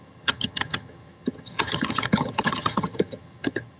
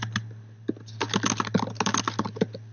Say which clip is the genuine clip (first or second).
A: second